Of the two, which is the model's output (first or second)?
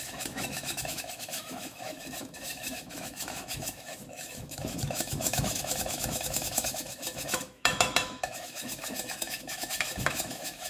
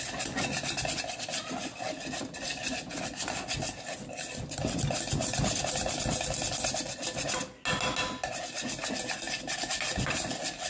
first